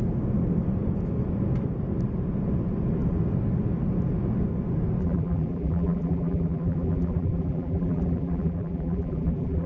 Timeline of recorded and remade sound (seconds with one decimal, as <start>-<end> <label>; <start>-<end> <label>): 0.0-5.0 recorded; 5.0-9.7 remade